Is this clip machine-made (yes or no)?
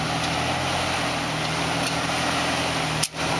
no